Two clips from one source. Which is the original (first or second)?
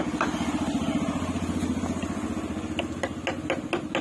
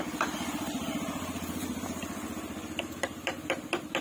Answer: first